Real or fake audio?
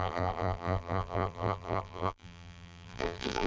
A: fake